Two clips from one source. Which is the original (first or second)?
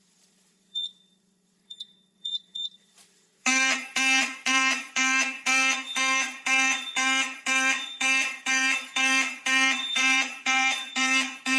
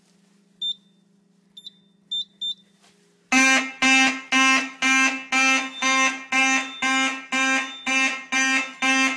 second